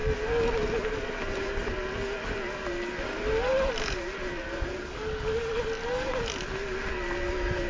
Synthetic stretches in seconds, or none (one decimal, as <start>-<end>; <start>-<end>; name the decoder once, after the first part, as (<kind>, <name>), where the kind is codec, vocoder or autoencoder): none